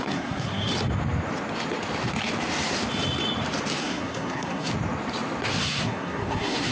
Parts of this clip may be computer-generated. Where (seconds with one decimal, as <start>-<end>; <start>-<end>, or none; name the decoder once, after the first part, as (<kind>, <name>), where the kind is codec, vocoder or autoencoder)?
0.0-0.7 (codec, SNAC); 3.8-4.7; 5.6-6.7